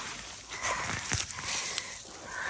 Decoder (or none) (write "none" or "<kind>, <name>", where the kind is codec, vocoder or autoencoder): none